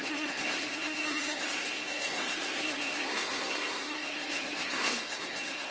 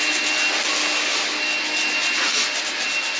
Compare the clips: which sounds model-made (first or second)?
first